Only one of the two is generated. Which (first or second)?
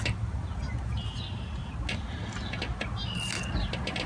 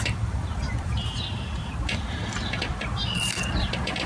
second